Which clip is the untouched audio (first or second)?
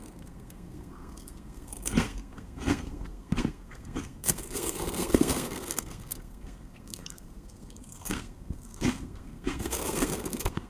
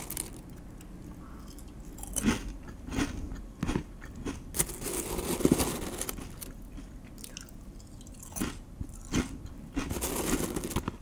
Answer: second